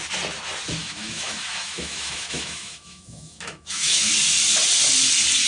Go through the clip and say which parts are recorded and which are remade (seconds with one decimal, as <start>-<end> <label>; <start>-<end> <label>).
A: 0.0-0.8 recorded; 0.8-4.1 remade; 4.1-5.5 recorded